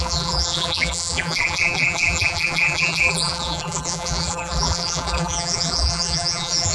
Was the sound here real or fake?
fake